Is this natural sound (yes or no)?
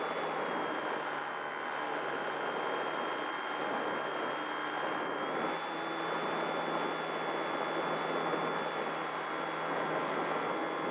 yes